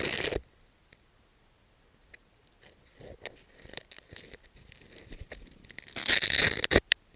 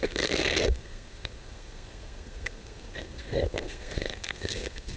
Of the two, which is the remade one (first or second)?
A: second